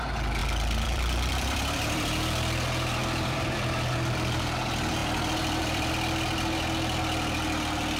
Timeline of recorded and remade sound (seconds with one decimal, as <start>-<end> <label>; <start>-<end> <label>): 0.0-0.4 recorded; 0.4-4.5 remade; 4.5-5.0 recorded; 5.0-5.9 remade; 5.9-8.0 recorded